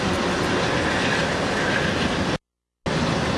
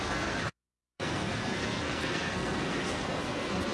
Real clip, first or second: first